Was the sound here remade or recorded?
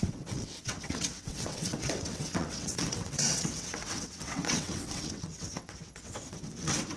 remade